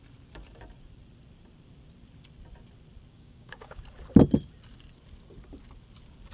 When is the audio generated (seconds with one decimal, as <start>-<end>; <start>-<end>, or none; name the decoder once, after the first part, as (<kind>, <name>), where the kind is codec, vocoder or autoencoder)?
3.1-3.8 (codec, DAC)